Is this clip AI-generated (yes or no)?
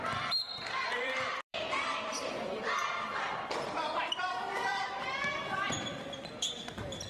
yes